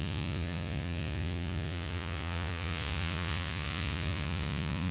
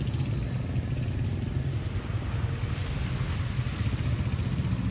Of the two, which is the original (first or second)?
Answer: second